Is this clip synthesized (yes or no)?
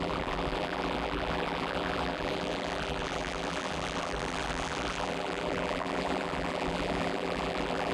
yes